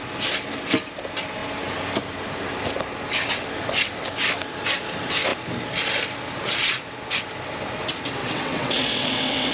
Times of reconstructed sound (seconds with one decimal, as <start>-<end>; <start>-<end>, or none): 8.2-9.5